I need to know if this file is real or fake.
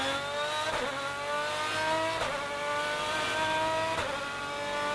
real